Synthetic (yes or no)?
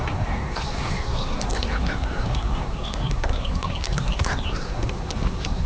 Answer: yes